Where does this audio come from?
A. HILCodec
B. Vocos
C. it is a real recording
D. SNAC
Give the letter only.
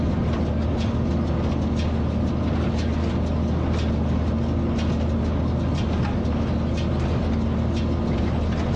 C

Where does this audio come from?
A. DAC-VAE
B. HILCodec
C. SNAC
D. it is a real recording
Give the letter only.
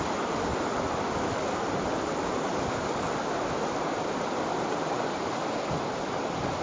D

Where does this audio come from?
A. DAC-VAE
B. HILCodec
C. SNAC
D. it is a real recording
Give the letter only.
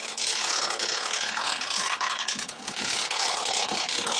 B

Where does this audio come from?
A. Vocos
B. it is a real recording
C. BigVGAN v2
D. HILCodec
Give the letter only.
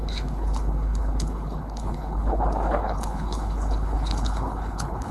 D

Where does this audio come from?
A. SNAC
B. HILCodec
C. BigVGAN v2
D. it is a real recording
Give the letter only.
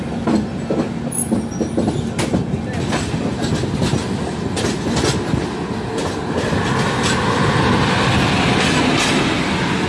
D